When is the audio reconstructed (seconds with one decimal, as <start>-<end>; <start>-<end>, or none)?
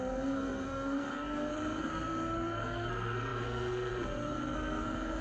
0.0-5.2